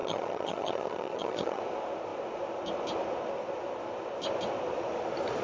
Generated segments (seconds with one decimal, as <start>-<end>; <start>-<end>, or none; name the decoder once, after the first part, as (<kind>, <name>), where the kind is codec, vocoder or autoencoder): 0.0-1.6 (vocoder, HiFi-GAN)